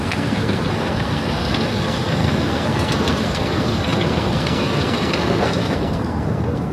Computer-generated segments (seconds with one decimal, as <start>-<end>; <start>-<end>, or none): 0.0-6.7